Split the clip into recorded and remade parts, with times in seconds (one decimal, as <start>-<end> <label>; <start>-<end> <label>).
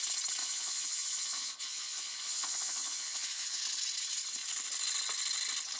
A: 0.0-0.4 recorded; 0.4-3.6 remade; 3.6-5.8 recorded